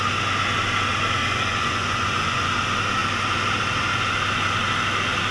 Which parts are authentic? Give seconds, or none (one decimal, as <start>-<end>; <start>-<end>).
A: 0.0-1.2; 2.5-5.3